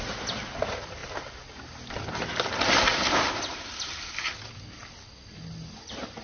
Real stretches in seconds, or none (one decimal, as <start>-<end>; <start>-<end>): 0.0-6.2

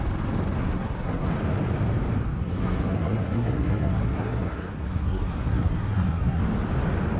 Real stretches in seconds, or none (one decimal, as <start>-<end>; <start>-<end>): 0.0-0.6; 1.3-2.4; 6.4-7.2

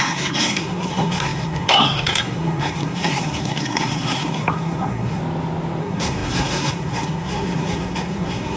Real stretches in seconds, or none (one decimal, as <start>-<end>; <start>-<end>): 5.2-5.8

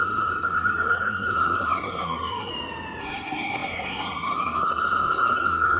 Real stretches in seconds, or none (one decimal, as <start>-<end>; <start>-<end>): 2.5-3.0

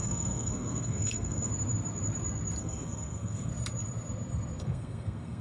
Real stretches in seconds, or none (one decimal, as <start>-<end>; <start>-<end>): 1.5-2.6; 3.5-4.6